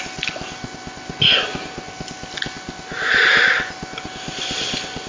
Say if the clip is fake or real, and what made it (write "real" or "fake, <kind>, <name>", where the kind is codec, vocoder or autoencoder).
real